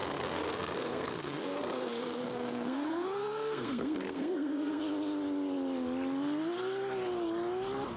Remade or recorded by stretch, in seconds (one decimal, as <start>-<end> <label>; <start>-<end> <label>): 0.0-4.8 remade; 4.8-8.0 recorded